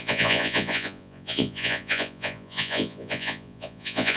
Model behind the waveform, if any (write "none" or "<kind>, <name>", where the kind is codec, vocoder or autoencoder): vocoder, Vocos